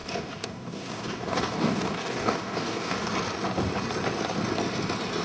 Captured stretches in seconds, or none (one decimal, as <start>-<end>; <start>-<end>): 3.1-5.2